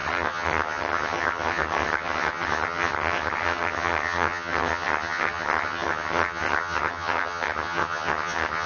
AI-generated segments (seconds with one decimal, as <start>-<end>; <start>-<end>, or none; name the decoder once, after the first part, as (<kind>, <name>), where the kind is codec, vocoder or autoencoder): 0.0-8.7 (vocoder, HiFi-GAN)